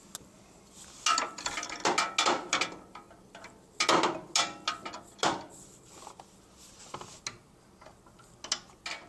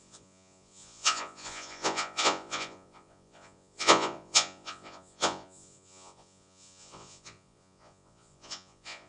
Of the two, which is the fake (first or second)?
second